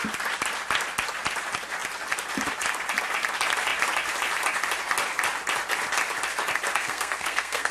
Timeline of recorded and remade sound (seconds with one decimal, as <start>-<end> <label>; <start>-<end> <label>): 0.0-6.7 recorded; 6.7-7.7 remade